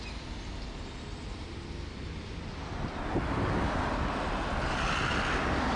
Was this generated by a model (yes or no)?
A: no